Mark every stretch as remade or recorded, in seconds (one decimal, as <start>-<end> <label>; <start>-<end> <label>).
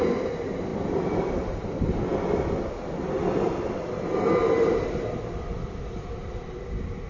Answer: 0.0-7.1 recorded